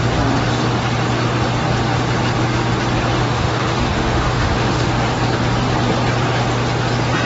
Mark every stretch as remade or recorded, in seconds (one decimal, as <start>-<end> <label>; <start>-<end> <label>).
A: 0.0-3.2 recorded; 3.2-4.9 remade; 4.9-7.2 recorded